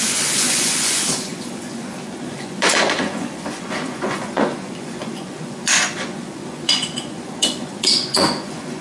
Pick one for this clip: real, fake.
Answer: fake